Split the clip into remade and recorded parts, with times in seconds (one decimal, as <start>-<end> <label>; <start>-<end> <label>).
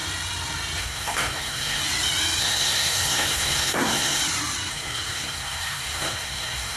0.0-0.8 recorded; 0.8-1.8 remade; 1.8-2.4 recorded; 2.4-4.2 remade; 4.2-4.7 recorded; 4.7-6.8 remade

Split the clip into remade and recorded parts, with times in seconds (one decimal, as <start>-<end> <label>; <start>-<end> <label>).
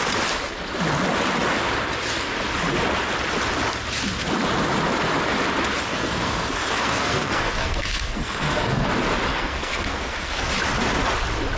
0.0-5.9 recorded; 5.9-8.9 remade; 8.9-9.3 recorded; 9.3-10.5 remade; 10.5-11.6 recorded